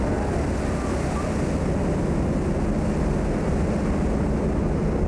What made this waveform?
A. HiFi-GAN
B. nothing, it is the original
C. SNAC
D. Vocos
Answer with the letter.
B